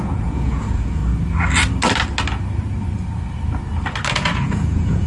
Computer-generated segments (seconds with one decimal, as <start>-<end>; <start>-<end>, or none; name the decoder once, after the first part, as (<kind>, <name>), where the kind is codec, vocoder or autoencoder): 0.0-1.0 (vocoder, Vocos); 4.1-5.1